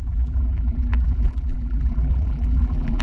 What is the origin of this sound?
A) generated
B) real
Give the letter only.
A